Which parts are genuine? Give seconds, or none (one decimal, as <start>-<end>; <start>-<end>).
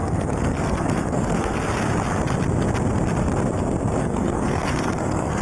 1.7-4.0